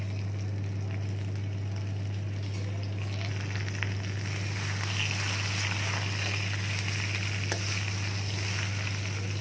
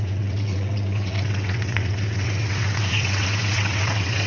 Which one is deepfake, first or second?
second